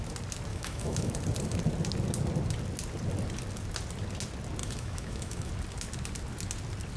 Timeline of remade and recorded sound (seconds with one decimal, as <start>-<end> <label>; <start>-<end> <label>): 0.0-0.5 recorded; 0.5-1.1 remade; 1.1-4.6 recorded; 4.6-5.5 remade; 5.5-7.0 recorded